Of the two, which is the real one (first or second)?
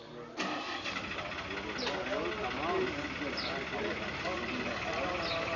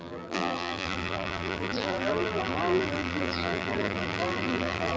first